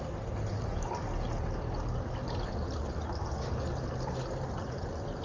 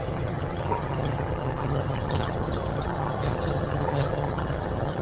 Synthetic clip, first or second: second